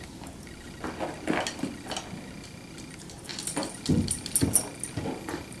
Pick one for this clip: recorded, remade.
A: recorded